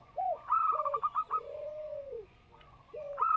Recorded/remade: remade